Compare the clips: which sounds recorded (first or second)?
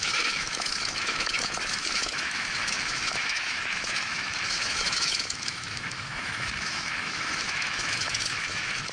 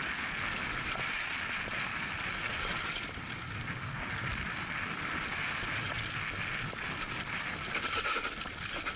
second